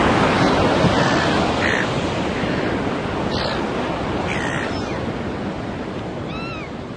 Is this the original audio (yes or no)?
yes